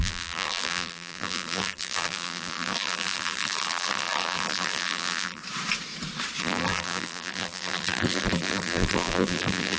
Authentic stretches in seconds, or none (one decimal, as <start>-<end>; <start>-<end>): 5.4-6.4